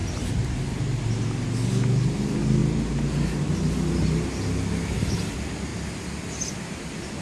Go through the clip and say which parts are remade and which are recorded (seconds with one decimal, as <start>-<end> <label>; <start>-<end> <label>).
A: 0.0-7.2 recorded